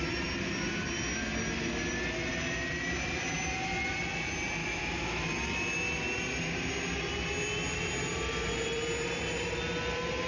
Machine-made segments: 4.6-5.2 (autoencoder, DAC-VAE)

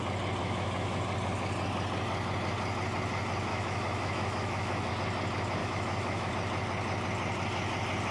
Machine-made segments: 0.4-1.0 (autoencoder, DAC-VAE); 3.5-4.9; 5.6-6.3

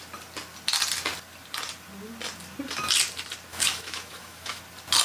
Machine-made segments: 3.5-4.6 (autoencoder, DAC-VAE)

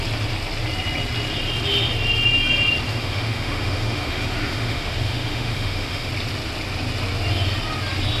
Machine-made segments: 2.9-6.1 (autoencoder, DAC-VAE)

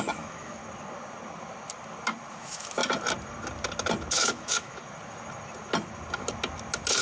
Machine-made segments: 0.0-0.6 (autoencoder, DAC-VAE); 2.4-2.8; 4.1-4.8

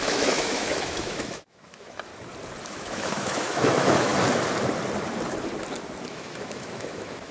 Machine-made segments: 0.0-2.1 (autoencoder, DAC-VAE); 2.6-4.1; 6.1-7.3

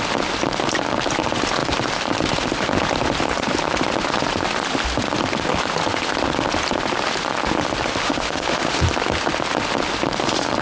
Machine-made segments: 8.0-8.8 (autoencoder, DAC-VAE)

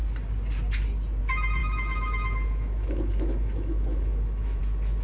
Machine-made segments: 1.6-4.6 (autoencoder, DAC-VAE)